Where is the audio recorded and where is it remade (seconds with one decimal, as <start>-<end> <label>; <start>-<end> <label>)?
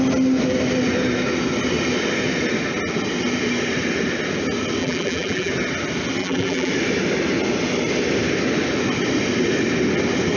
0.0-4.8 recorded; 4.8-5.5 remade; 5.5-6.2 recorded; 6.2-6.7 remade; 6.7-10.4 recorded